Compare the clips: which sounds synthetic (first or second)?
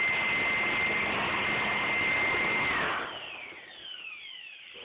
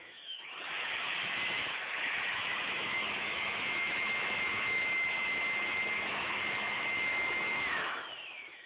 second